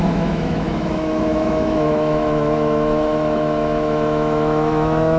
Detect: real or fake fake